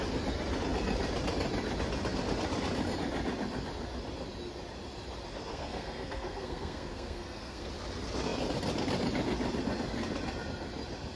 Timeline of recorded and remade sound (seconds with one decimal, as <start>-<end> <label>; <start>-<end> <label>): 0.0-5.5 recorded; 5.5-7.7 remade; 7.7-11.2 recorded